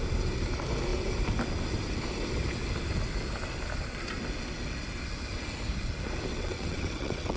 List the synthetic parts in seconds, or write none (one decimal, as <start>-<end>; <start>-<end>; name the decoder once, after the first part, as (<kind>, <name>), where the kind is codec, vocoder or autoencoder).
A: 6.3-7.4 (vocoder, WaveNeXt)